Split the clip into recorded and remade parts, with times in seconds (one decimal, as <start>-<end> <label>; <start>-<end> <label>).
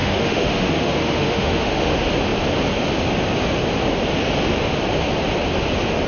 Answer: 0.0-1.9 remade; 1.9-6.1 recorded